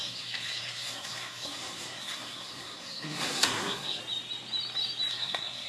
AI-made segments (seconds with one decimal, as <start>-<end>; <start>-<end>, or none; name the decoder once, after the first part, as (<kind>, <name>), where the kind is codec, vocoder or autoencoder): 0.0-4.0 (codec, SNAC); 5.1-5.7